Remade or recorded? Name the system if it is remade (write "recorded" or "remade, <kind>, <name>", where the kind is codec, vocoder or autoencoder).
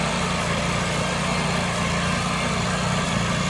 recorded